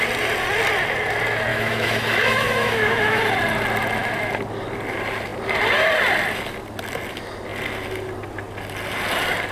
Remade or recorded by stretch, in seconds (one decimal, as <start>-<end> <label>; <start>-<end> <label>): 0.0-1.5 recorded; 1.5-3.2 remade; 3.2-9.5 recorded